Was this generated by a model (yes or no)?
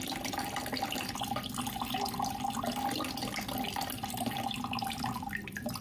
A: no